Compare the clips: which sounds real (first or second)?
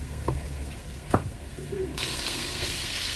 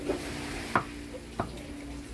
second